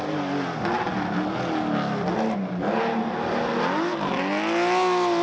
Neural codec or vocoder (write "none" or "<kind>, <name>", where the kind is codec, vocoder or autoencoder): none